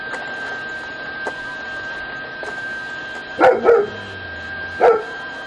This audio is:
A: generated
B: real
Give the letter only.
B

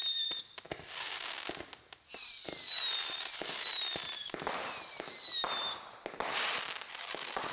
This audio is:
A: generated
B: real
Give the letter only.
B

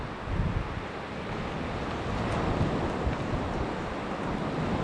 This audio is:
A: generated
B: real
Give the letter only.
B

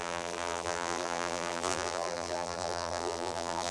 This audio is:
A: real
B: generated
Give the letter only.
B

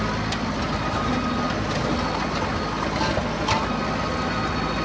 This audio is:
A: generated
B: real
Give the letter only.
B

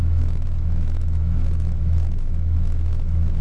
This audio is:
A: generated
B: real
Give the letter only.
A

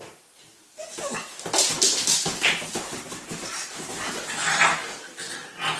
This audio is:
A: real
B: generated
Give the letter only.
A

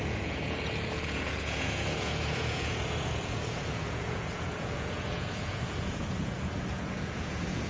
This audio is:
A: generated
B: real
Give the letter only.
A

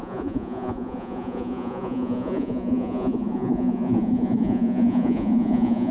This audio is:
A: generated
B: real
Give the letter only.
A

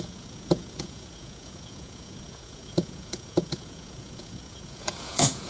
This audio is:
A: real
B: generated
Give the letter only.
B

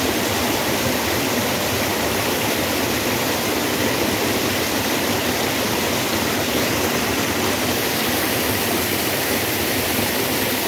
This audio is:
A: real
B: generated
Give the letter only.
B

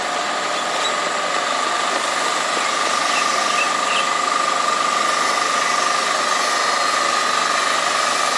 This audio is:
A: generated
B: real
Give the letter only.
B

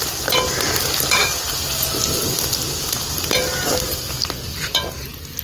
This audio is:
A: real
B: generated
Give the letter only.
A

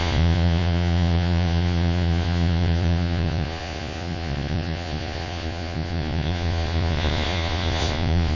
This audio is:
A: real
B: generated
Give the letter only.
B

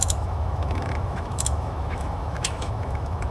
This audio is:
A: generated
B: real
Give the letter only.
A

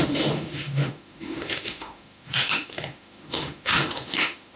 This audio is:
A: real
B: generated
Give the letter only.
B